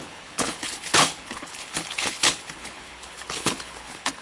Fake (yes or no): yes